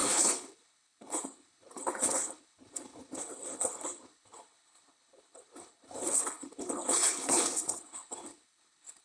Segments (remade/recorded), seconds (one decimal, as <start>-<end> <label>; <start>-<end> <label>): 0.0-9.0 remade